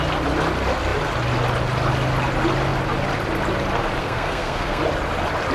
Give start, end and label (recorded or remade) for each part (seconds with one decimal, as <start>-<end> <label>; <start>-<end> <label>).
0.0-4.0 recorded; 4.0-4.8 remade; 4.8-5.5 recorded